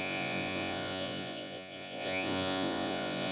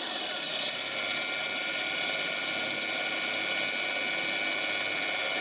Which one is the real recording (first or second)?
second